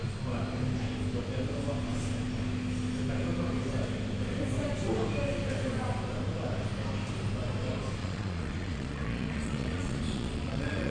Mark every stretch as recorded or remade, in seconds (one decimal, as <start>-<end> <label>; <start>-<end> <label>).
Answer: 0.0-8.0 recorded; 8.0-10.9 remade